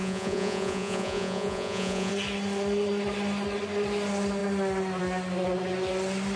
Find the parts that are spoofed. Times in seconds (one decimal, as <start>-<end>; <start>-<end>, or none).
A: 0.0-2.1